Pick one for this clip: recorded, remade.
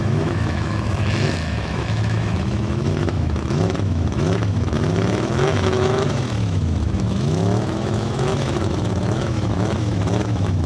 remade